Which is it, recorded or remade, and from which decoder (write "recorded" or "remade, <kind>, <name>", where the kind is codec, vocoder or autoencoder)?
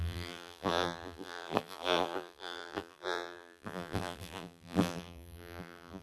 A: remade, vocoder, BigVGAN v2